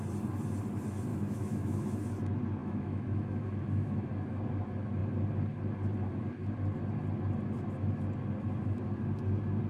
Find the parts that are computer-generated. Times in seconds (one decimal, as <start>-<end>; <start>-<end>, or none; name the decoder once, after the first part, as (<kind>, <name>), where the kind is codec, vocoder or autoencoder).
1.1-2.0 (autoencoder, DAC-VAE); 2.6-4.1